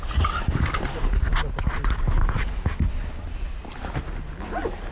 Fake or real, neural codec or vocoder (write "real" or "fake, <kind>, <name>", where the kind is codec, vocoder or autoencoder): real